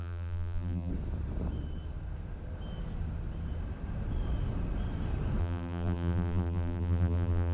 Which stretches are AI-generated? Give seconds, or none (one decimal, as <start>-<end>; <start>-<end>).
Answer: 0.0-0.9; 5.4-7.5